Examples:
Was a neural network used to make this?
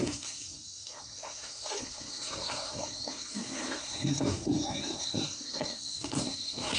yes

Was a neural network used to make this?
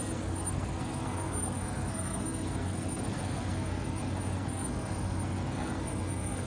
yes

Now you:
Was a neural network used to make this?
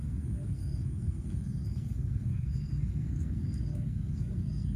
yes